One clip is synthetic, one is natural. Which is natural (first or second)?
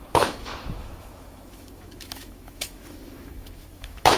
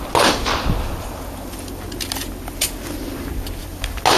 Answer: second